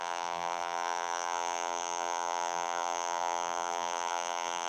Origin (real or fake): fake